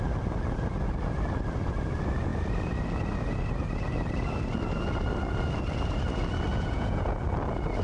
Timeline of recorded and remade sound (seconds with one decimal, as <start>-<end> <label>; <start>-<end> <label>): 0.0-6.5 recorded; 6.5-7.3 remade; 7.3-7.8 recorded